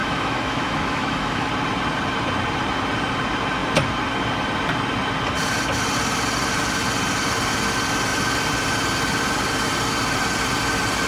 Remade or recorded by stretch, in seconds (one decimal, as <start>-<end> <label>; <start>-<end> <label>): 0.0-1.5 remade; 1.5-11.1 recorded